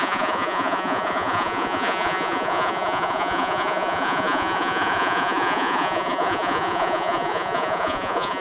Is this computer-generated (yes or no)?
yes